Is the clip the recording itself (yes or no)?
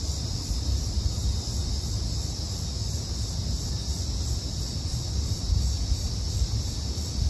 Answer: yes